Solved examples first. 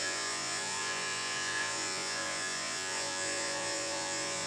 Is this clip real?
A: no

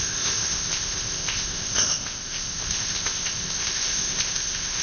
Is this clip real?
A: no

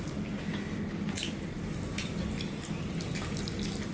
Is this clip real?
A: yes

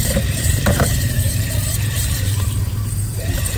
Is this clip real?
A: no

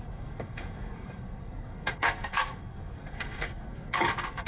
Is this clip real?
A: no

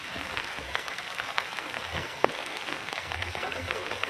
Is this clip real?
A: no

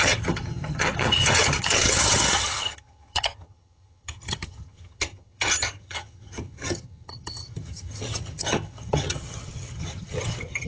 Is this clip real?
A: no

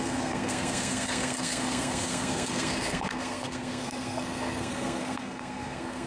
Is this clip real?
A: no